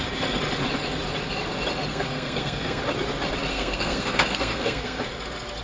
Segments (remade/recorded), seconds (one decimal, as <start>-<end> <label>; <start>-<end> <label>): 0.0-1.9 recorded; 1.9-2.8 remade; 2.8-3.5 recorded; 3.5-5.0 remade; 5.0-5.6 recorded